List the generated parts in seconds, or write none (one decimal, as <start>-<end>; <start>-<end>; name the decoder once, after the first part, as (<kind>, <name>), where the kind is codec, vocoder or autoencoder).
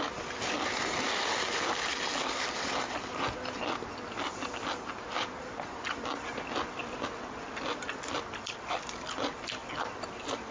none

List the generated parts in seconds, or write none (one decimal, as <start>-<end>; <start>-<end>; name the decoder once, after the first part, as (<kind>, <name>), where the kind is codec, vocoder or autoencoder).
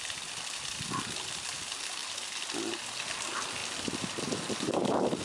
none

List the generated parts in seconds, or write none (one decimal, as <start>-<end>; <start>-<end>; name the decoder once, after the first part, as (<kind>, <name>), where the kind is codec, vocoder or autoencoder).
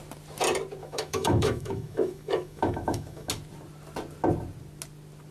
0.8-3.3 (autoencoder, DAC-VAE)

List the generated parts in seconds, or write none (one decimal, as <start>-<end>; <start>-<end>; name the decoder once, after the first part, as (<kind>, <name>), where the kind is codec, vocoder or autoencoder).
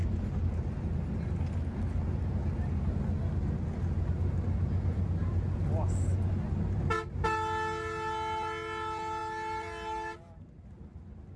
none